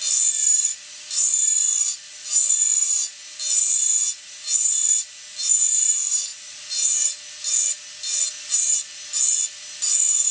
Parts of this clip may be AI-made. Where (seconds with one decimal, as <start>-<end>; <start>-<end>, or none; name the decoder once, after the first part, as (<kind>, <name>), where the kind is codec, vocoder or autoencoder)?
none